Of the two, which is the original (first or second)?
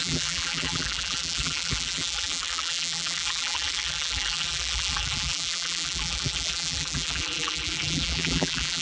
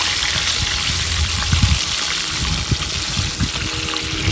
second